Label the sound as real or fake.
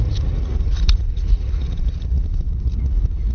fake